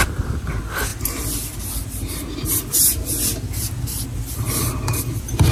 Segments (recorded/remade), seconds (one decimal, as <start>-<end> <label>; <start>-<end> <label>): 0.0-5.5 recorded